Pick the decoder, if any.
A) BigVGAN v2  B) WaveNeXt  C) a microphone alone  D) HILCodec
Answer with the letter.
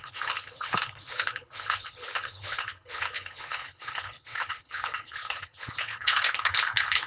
D